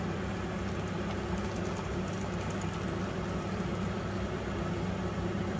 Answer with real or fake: real